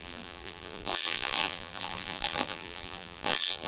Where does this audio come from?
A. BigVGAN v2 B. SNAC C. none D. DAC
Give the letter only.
A